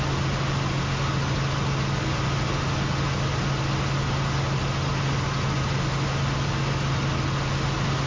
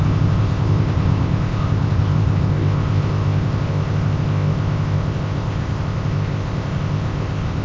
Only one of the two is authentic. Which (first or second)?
first